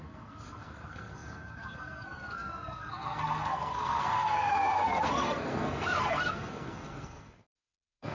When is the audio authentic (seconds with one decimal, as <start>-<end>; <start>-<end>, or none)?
none